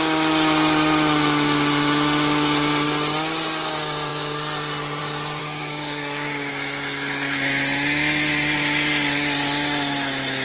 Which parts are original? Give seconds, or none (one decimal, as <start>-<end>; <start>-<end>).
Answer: 0.0-5.4; 6.5-10.4